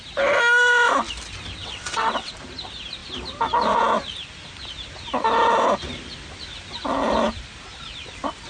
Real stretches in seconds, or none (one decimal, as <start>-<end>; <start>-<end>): 0.0-1.6; 2.3-8.5